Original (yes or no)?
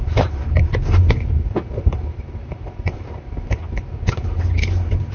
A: no